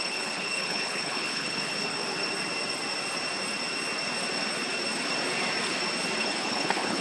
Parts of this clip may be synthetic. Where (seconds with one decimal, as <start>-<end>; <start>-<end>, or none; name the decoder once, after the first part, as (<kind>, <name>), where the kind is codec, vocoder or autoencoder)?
0.0-2.0 (codec, HILCodec); 6.2-7.0